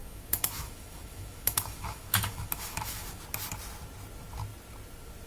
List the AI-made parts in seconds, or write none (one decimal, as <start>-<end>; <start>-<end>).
0.0-3.2